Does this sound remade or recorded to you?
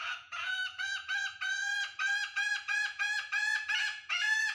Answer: remade